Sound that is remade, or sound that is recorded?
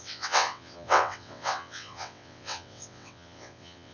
remade